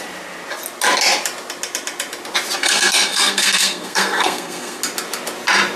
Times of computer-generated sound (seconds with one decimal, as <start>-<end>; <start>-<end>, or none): 2.6-4.8